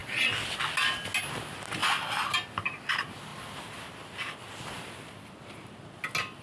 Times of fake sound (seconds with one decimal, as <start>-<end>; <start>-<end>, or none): none